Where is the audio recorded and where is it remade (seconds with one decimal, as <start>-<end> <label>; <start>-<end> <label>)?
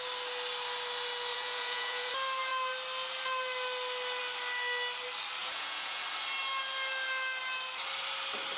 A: 0.0-1.3 recorded; 1.3-2.1 remade; 2.1-5.4 recorded; 5.4-6.0 remade; 6.0-8.6 recorded